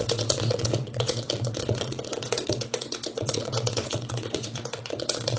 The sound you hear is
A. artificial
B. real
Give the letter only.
A